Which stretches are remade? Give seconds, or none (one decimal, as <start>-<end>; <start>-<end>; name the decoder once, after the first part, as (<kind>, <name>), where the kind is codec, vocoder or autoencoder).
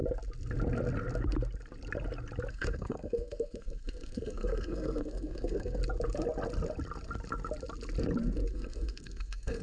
2.5-5.8 (codec, SNAC); 8.5-9.6